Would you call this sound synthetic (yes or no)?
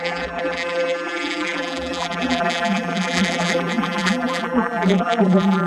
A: yes